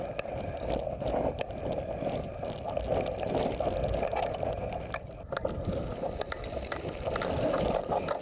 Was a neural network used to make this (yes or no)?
no